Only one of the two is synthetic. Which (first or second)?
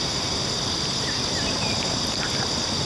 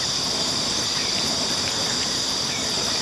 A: second